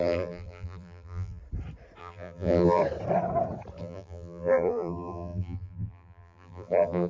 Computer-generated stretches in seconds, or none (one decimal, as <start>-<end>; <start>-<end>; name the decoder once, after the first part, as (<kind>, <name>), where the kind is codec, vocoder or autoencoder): 0.0-1.4 (vocoder, BigVGAN v2); 2.0-2.8; 3.8-7.1